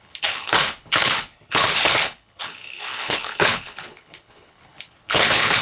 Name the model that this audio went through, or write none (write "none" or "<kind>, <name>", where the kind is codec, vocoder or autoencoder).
codec, HILCodec